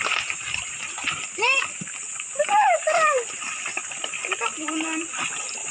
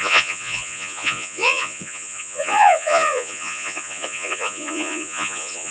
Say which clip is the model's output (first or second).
second